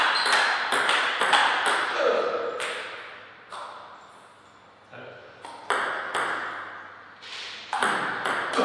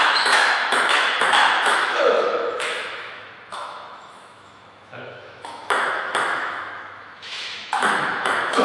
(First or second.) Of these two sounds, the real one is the first